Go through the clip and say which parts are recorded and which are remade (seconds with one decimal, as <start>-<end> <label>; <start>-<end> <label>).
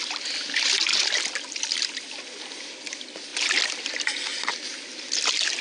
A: 0.0-5.6 recorded